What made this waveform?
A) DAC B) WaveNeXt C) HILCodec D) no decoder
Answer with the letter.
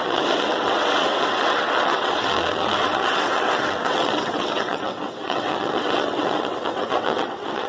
B